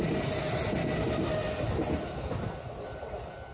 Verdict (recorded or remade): recorded